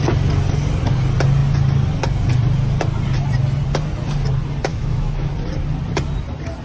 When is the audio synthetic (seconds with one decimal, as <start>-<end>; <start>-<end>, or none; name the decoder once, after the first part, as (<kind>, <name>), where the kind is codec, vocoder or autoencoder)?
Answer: 4.7-5.3 (autoencoder, DAC-VAE)